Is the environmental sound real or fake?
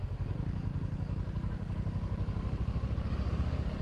fake